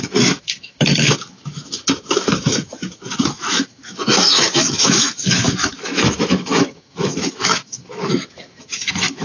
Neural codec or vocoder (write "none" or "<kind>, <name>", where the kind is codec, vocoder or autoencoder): autoencoder, DAC-VAE